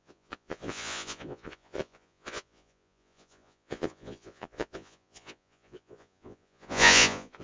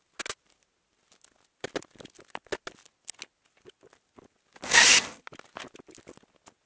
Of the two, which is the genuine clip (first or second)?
second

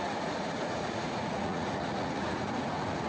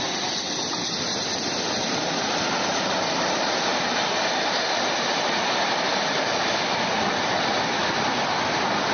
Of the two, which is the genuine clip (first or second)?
second